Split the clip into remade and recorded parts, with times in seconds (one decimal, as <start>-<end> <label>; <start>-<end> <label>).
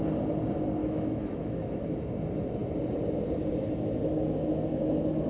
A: 0.0-0.8 recorded; 0.8-2.1 remade; 2.1-5.3 recorded